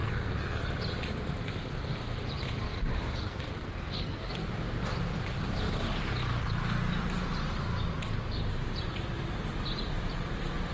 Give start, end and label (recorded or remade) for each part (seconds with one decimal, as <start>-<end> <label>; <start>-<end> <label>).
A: 0.0-0.6 remade; 0.6-2.9 recorded; 2.9-4.5 remade; 4.5-10.7 recorded